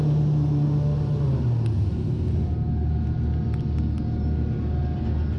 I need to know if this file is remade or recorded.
recorded